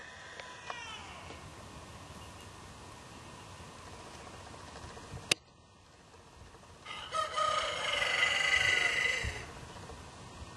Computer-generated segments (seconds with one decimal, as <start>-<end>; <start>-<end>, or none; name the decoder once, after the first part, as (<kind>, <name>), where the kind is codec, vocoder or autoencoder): none